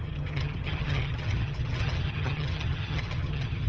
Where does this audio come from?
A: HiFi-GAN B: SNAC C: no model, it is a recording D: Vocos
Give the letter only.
A